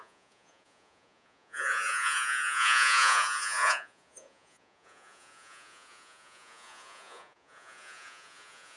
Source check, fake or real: fake